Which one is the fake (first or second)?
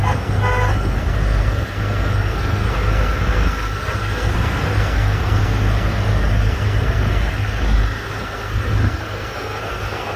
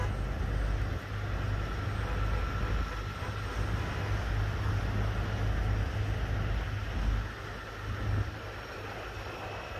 first